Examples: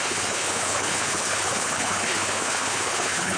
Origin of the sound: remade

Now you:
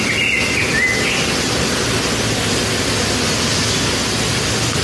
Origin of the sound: recorded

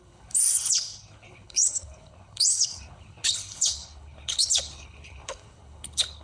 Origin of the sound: remade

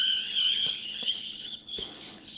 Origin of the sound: remade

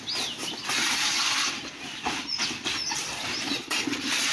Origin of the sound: recorded